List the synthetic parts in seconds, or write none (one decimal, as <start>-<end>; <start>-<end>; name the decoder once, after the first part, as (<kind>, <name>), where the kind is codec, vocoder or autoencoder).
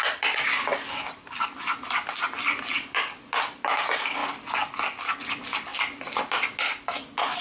none